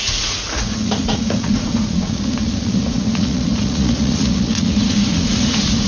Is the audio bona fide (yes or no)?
no